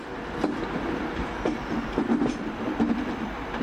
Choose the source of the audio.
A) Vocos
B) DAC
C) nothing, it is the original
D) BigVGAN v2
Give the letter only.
D